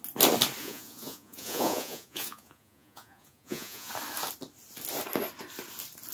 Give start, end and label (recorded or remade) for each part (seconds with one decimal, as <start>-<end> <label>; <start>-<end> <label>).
0.0-0.6 recorded; 0.6-3.9 remade; 3.9-6.1 recorded